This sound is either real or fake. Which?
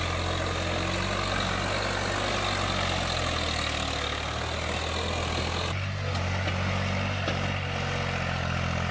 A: real